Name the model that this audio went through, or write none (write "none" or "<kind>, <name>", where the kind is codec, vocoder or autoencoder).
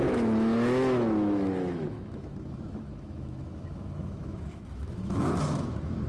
autoencoder, DAC-VAE